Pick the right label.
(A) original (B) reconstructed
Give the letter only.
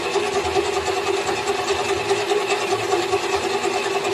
A